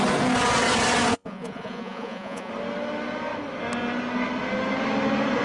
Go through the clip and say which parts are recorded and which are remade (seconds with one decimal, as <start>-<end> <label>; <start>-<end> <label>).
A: 0.0-1.1 recorded; 1.1-2.5 remade; 2.5-5.4 recorded